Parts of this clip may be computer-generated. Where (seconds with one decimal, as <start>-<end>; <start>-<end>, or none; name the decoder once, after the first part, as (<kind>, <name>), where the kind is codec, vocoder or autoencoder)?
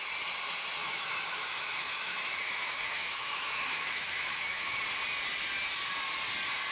0.8-4.8 (autoencoder, DAC-VAE)